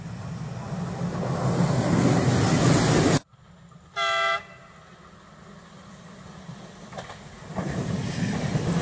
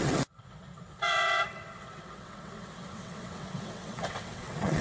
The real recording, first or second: first